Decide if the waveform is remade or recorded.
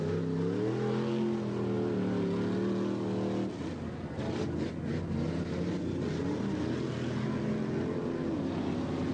recorded